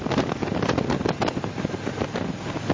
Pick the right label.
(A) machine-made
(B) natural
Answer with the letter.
B